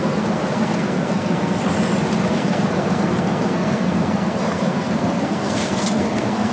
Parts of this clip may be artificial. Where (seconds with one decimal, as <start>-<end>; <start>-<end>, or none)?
0.0-1.6; 2.3-6.5